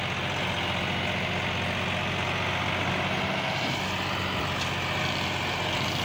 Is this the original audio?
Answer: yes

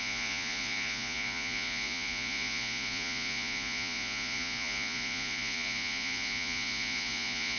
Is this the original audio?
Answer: no